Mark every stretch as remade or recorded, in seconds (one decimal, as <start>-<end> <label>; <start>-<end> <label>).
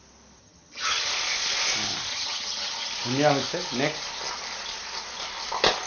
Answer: 0.0-0.4 recorded; 0.4-1.1 remade; 1.1-2.1 recorded; 2.1-2.9 remade; 2.9-5.9 recorded